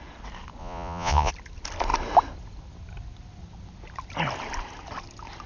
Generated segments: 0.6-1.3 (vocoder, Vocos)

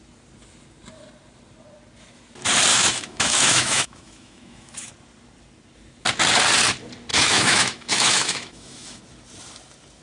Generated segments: 2.7-4.9 (autoencoder, DAC-VAE); 7.1-9.0